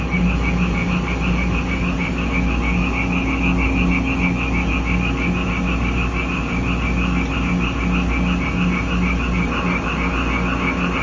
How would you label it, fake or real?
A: real